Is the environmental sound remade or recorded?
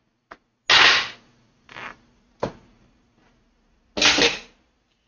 recorded